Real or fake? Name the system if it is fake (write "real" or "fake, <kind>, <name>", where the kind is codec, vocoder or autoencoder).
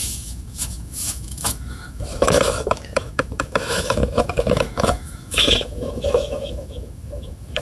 fake, autoencoder, DAC-VAE